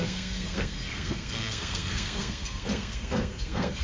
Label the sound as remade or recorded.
remade